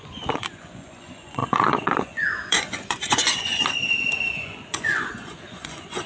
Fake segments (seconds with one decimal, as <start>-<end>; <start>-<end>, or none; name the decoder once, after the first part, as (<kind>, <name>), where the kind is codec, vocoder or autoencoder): 0.0-6.1 (vocoder, Vocos)